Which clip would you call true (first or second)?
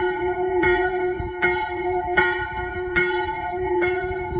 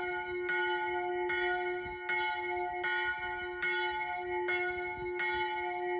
second